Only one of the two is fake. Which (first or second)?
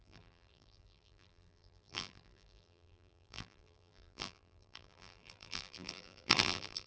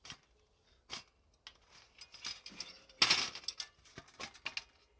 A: first